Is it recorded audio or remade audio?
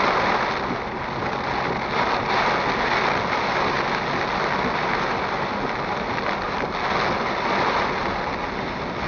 recorded